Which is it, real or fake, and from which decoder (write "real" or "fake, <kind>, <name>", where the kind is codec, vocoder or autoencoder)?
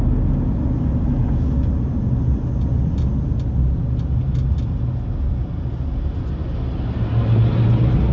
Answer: real